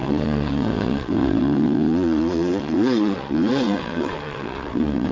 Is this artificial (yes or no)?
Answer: yes